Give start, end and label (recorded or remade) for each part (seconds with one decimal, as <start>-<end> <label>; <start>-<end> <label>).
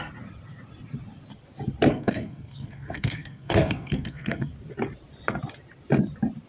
0.0-1.9 recorded; 1.9-4.5 remade; 4.5-6.5 recorded